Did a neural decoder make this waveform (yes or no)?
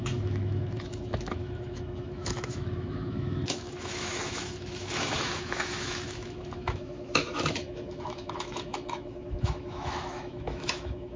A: yes